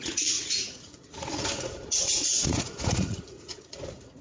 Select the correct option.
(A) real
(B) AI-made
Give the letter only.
B